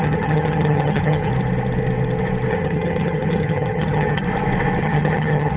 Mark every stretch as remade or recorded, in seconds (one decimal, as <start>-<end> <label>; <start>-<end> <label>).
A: 0.0-1.3 remade; 1.3-2.5 recorded; 2.5-4.2 remade; 4.2-4.8 recorded; 4.8-5.6 remade